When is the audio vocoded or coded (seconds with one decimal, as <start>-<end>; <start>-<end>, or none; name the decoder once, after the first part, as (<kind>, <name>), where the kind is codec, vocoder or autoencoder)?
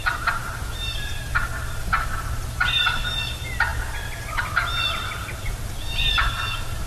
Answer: 0.0-1.2 (vocoder, BigVGAN v2)